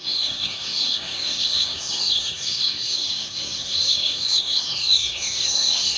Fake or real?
fake